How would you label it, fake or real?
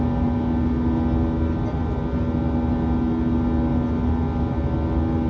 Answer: real